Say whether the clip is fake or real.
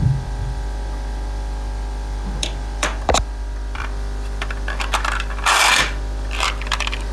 fake